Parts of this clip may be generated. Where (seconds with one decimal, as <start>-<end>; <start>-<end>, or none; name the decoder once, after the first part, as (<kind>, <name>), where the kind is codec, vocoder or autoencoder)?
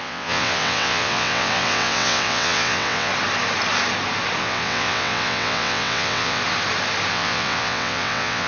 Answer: 0.0-3.1 (vocoder, WaveNeXt); 4.4-6.4; 7.1-8.5